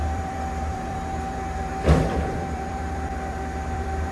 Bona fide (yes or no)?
no